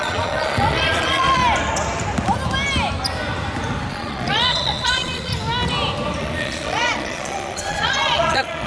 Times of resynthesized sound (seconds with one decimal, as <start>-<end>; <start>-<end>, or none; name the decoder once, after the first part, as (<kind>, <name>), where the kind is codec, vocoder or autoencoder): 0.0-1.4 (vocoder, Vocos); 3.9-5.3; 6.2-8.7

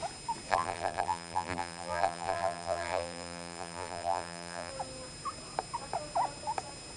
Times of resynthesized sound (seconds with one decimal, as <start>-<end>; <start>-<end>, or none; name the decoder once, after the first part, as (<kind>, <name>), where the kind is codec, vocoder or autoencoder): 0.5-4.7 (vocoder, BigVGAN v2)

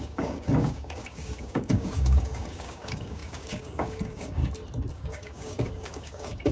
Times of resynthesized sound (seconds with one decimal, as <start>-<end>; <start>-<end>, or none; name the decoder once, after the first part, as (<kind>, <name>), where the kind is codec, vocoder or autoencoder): 0.0-4.4 (codec, DAC); 4.9-6.5